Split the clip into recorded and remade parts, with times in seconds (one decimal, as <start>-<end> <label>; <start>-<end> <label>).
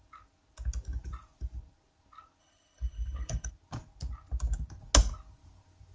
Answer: 0.0-2.4 recorded; 2.4-3.5 remade; 3.5-5.9 recorded